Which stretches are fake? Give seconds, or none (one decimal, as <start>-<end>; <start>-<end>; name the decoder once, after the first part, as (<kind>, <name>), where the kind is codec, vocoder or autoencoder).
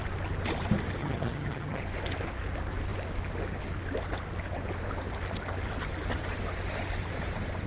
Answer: 1.0-1.8 (vocoder, HiFi-GAN)